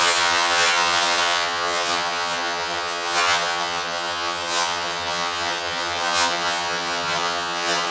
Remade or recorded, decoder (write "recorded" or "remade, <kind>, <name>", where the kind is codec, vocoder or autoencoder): remade, vocoder, HiFi-GAN